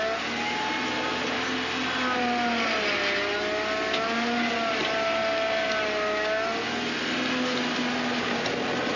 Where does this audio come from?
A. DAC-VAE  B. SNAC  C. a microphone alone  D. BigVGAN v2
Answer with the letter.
C